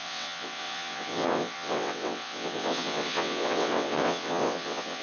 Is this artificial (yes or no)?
yes